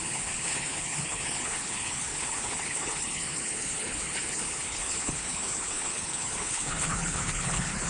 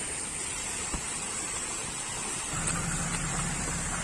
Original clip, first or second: second